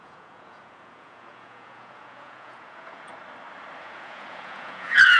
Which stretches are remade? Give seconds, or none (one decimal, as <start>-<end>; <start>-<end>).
0.0-3.1; 3.8-5.2